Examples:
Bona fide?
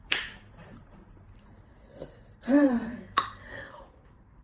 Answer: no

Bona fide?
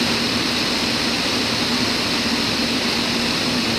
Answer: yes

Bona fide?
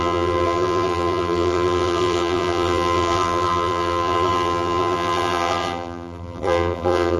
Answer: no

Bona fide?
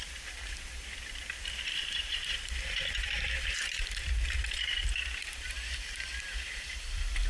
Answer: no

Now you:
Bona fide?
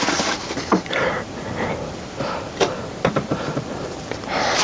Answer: no